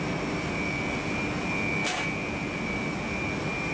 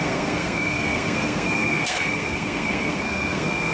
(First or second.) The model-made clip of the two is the second